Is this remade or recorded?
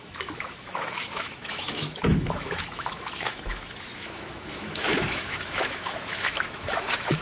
remade